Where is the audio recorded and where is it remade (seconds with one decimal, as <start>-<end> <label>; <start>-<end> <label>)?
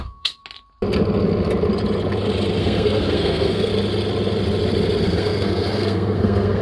0.0-0.4 remade; 0.4-2.6 recorded; 2.6-3.7 remade; 3.7-5.0 recorded; 5.0-6.6 remade